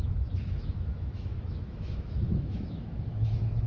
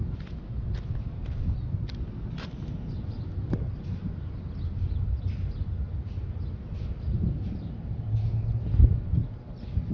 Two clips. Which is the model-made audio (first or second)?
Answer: first